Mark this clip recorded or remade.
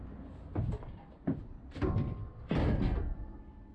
recorded